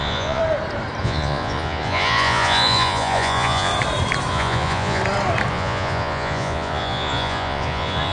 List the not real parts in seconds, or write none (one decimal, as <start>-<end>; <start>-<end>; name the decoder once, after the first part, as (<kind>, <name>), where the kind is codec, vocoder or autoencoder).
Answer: 0.0-0.4 (vocoder, Vocos); 1.0-3.7; 4.3-5.0; 5.5-8.1